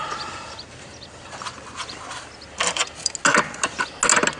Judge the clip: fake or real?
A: real